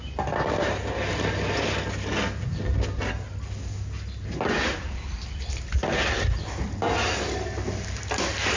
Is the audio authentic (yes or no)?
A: yes